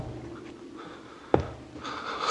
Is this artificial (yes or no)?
no